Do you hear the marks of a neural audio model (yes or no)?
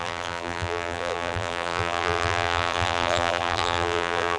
yes